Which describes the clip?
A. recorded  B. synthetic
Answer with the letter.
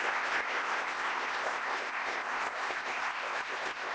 B